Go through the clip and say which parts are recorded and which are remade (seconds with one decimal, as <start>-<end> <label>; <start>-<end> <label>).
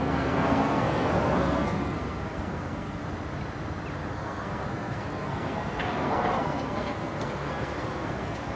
0.0-3.0 remade; 3.0-4.1 recorded; 4.1-8.6 remade